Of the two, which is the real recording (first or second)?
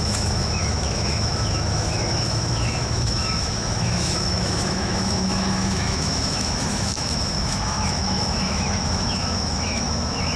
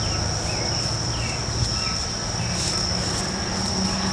second